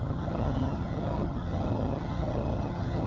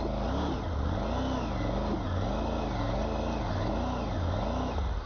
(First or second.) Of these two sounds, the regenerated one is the first